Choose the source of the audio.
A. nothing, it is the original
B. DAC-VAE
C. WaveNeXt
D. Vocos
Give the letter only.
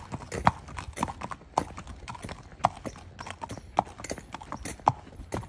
A